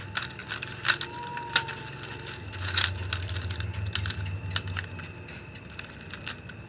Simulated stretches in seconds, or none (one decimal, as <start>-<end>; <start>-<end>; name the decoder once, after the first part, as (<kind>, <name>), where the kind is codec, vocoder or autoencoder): none